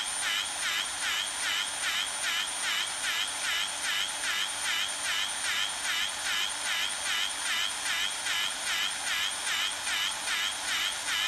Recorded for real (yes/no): yes